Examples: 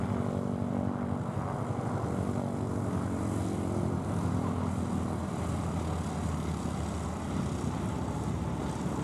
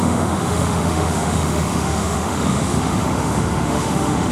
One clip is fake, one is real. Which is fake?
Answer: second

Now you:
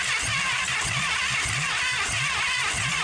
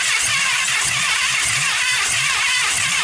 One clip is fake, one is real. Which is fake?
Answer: second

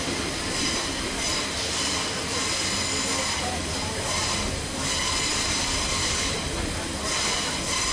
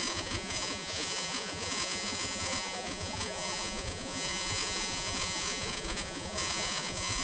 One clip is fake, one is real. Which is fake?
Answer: second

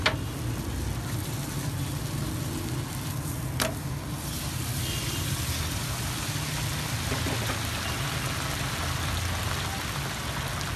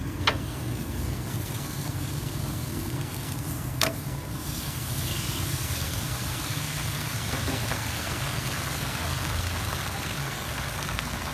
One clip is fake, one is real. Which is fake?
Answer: second